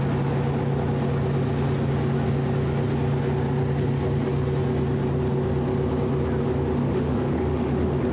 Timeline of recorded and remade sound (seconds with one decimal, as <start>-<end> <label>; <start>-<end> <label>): 0.0-6.8 recorded; 6.8-8.1 remade